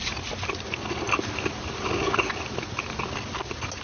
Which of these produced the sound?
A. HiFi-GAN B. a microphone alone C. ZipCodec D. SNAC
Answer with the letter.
B